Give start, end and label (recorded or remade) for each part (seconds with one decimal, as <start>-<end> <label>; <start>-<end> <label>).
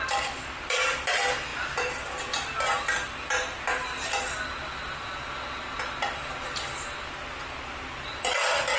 0.0-8.8 recorded